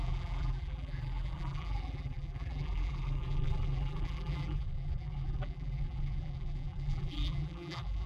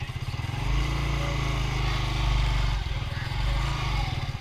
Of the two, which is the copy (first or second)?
first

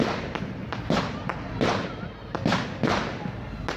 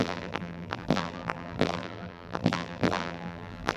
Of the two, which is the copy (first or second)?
second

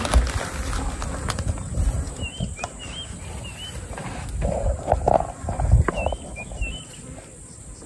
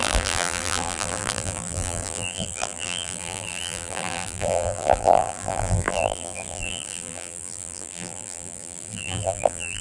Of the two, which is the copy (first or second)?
second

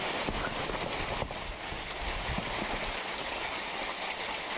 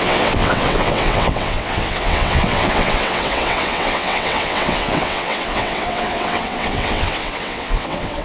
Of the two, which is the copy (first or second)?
second